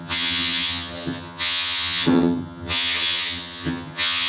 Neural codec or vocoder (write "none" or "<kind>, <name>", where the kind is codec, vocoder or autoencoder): vocoder, HiFi-GAN